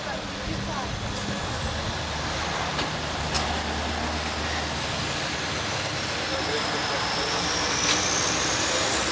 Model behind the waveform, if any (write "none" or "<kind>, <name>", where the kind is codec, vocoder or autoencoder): none